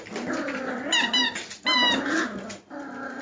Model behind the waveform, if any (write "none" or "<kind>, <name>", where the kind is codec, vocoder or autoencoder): none